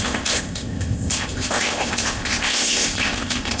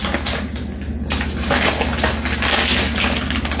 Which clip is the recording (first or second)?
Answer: second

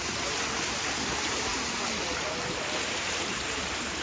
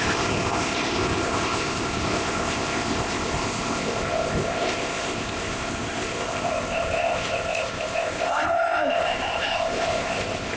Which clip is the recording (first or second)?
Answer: first